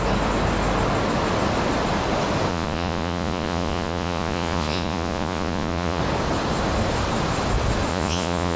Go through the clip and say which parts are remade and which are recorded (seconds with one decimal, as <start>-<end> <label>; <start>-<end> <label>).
0.0-2.5 recorded; 2.5-6.0 remade; 6.0-7.9 recorded; 7.9-8.6 remade